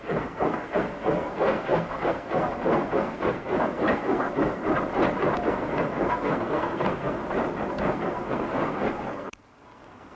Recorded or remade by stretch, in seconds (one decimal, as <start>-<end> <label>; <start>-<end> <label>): 0.0-4.6 remade; 4.6-5.5 recorded; 5.5-7.2 remade; 7.2-7.7 recorded; 7.7-10.2 remade